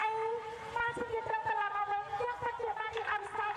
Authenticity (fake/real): real